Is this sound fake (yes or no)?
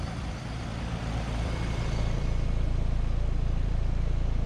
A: yes